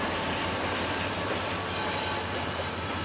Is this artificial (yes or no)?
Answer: no